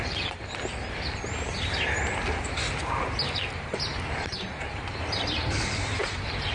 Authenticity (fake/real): real